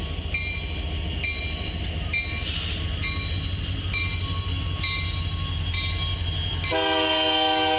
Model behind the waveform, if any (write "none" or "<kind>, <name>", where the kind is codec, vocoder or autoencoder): none